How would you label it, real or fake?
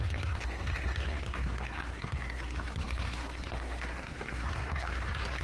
fake